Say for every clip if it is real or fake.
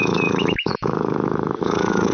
fake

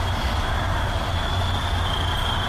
real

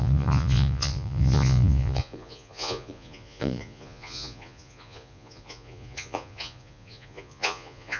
fake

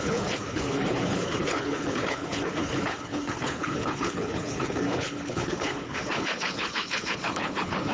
fake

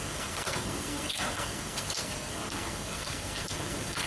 fake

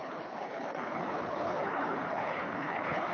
fake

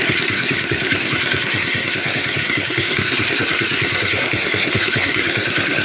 fake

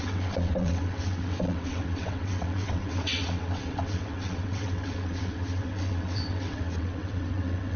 fake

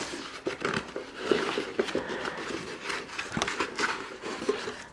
fake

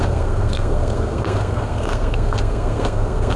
fake